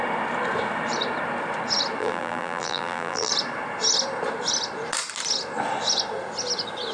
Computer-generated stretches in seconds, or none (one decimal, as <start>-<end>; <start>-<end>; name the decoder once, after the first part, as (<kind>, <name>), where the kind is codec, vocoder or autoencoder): 2.0-3.3 (vocoder, BigVGAN v2)